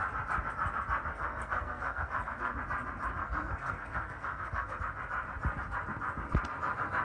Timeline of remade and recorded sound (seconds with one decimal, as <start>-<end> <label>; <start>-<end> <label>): 0.0-1.1 recorded; 1.1-2.6 remade; 2.6-3.2 recorded; 3.2-4.8 remade; 4.8-7.0 recorded